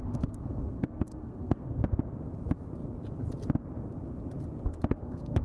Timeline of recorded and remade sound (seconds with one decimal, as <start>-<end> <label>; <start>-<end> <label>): 0.0-1.8 remade; 1.8-4.9 recorded; 4.9-5.4 remade

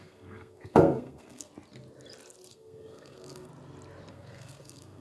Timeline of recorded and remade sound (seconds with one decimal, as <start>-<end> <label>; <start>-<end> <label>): 0.0-1.5 remade; 1.5-2.5 recorded; 2.5-3.5 remade; 3.5-4.1 recorded; 4.1-5.0 remade

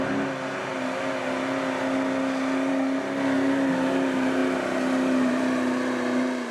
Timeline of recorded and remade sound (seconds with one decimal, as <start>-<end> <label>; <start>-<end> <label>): 0.0-6.5 recorded